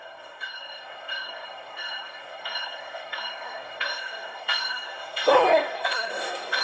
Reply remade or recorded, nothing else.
remade